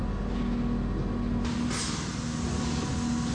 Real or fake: real